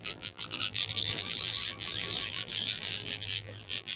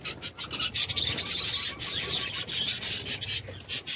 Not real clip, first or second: first